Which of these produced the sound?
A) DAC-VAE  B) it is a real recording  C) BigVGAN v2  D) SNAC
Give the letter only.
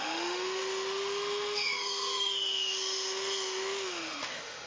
A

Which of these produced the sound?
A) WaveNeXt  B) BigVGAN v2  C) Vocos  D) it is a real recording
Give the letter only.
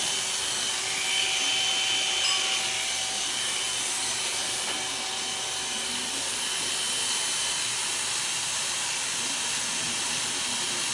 D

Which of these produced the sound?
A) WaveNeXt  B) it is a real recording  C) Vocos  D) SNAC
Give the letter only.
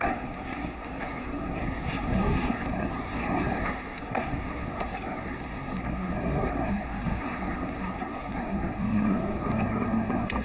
D